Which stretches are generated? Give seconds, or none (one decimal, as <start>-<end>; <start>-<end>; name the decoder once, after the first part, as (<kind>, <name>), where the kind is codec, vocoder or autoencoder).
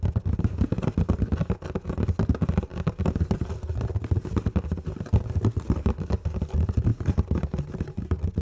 none